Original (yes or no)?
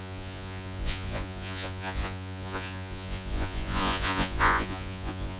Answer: no